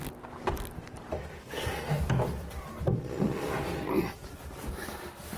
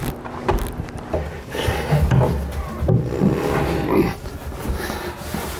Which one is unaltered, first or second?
second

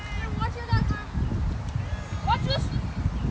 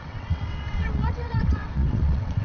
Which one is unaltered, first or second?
first